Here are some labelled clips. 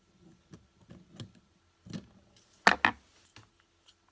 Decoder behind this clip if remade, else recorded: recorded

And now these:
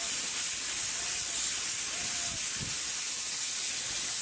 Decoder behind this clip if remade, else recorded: recorded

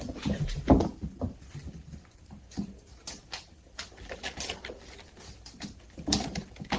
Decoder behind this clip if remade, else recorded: recorded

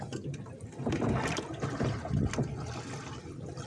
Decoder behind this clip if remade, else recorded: recorded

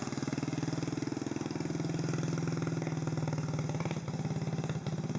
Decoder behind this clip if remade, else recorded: recorded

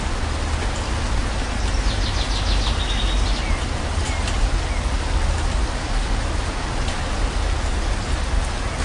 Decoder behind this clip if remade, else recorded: recorded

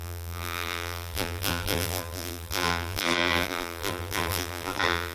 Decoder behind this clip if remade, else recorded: remade, vocoder, BigVGAN v2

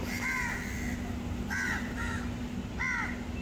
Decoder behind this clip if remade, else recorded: recorded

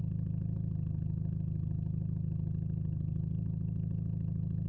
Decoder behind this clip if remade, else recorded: recorded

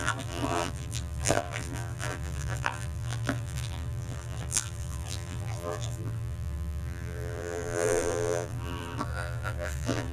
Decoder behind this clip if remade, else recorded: remade, vocoder, BigVGAN v2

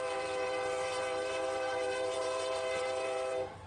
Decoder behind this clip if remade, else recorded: remade, vocoder, BigVGAN v2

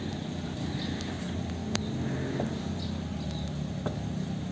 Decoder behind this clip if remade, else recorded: recorded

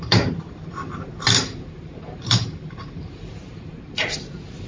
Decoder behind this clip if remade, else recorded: remade, vocoder, BigVGAN v2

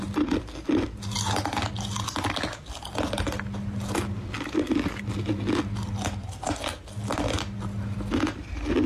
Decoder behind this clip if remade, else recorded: recorded